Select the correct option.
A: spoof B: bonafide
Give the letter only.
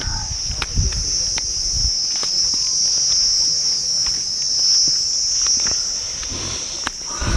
B